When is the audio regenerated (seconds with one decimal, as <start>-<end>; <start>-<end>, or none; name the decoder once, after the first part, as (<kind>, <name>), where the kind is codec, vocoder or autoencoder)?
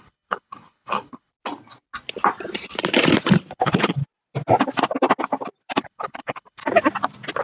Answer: 0.0-1.3 (codec, HILCodec); 3.5-4.0; 5.8-6.6